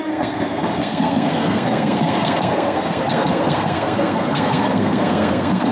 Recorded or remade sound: remade